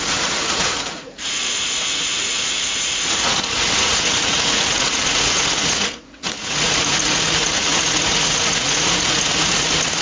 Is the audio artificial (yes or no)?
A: yes